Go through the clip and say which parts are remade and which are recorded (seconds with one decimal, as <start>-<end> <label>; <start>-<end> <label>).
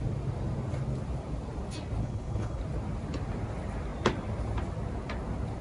0.0-2.0 recorded; 2.0-2.6 remade; 2.6-5.6 recorded